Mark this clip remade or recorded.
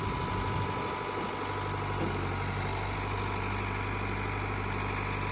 recorded